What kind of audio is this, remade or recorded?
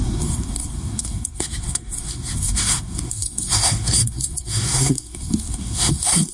remade